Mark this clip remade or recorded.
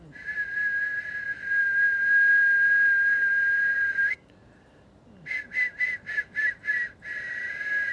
recorded